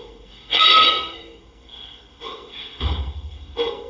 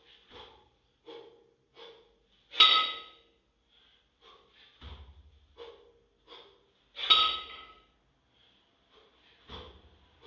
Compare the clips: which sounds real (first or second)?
second